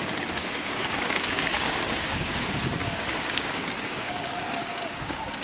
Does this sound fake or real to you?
fake